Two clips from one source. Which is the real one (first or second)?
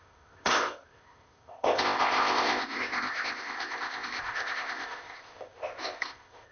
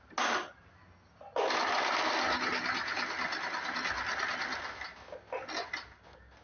second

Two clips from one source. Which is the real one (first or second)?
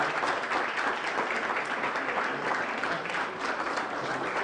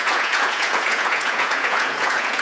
first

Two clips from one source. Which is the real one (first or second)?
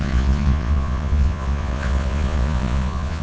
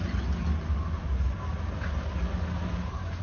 second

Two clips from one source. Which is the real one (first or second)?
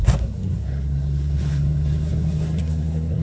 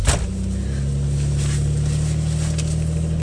second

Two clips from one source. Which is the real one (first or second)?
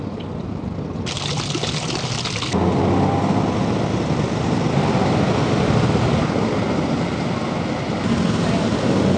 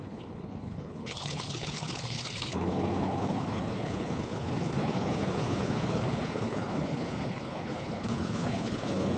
first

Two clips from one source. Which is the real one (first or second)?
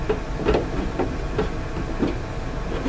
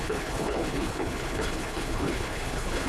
first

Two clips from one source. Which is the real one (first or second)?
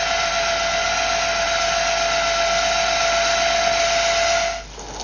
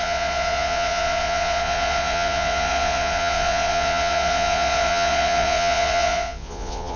first